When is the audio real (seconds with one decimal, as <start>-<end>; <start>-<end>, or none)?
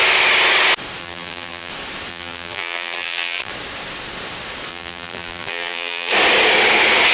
0.0-1.0; 1.7-2.1; 3.5-4.7; 6.1-7.1